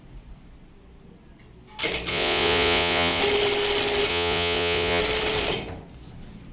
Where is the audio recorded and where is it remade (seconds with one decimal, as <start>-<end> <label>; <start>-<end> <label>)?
0.0-2.1 recorded; 2.1-3.2 remade; 3.2-4.1 recorded; 4.1-5.0 remade; 5.0-6.5 recorded